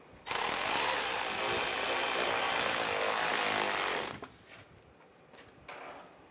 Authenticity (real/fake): real